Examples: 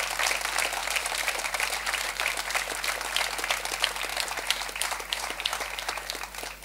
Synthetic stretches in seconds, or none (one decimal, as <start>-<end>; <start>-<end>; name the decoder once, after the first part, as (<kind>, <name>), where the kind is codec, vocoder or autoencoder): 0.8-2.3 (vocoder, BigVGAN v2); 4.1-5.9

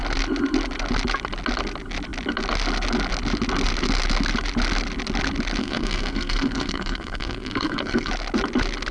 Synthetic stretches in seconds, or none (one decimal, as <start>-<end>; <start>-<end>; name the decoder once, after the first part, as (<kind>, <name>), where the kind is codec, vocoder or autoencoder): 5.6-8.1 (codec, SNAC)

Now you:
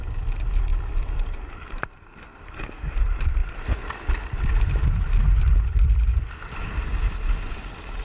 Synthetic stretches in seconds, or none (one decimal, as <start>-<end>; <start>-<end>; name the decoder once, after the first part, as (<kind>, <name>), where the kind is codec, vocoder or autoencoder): 0.7-2.6 (vocoder, BigVGAN v2); 3.4-6.8